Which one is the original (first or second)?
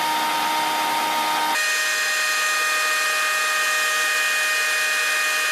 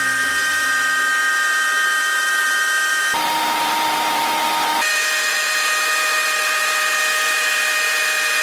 first